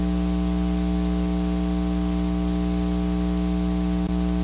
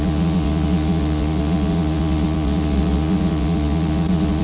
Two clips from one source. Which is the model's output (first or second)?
second